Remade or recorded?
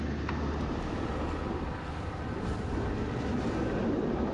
recorded